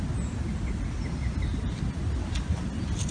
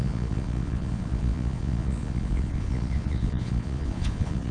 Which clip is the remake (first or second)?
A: second